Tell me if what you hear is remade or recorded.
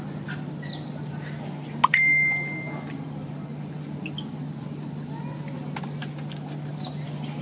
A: recorded